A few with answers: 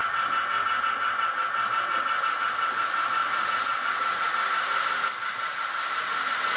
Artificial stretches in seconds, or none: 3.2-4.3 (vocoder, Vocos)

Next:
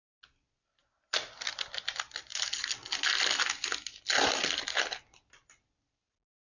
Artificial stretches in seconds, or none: none

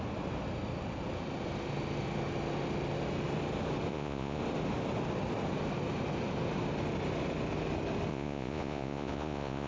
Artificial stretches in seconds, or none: 3.9-4.4 (vocoder, Vocos); 8.1-9.7